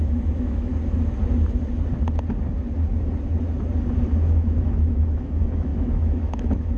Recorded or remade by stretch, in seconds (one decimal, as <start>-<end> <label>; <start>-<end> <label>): 0.0-0.7 remade; 0.7-4.0 recorded; 4.0-6.8 remade